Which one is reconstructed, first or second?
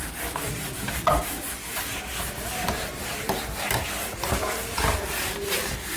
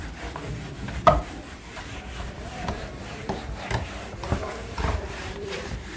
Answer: second